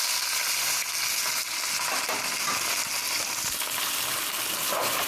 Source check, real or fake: real